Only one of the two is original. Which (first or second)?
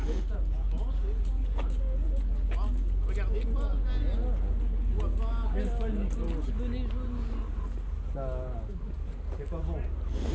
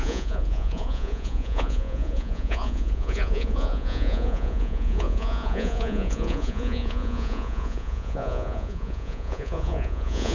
first